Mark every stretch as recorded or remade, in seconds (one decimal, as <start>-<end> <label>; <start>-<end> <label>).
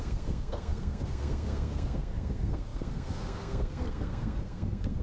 0.0-5.0 remade